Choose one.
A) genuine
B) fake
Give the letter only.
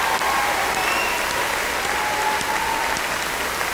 A